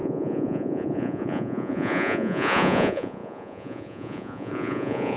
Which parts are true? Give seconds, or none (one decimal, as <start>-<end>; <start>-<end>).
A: none